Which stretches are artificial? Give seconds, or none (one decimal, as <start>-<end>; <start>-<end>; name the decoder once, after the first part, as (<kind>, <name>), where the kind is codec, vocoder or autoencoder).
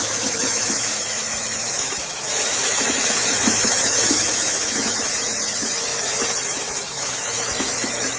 0.0-8.2 (autoencoder, DAC-VAE)